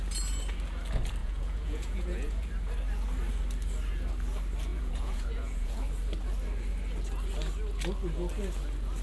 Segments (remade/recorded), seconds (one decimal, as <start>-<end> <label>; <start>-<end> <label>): 0.0-1.2 recorded; 1.2-2.5 remade; 2.5-4.7 recorded; 4.7-5.8 remade; 5.8-9.0 recorded